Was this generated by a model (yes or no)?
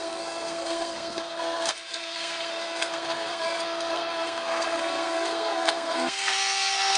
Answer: yes